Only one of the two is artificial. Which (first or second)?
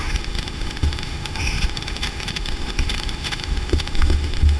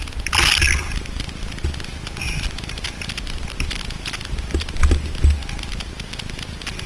first